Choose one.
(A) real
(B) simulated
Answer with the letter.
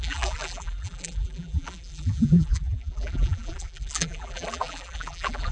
B